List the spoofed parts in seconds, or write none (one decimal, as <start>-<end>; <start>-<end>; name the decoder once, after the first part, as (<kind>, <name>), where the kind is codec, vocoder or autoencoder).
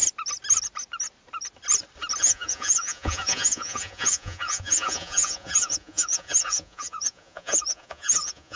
2.2-8.6 (vocoder, Vocos)